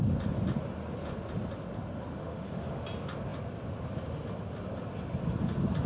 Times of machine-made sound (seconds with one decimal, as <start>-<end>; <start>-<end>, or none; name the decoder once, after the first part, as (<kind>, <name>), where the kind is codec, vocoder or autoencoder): 2.2-2.8 (autoencoder, DAC-VAE)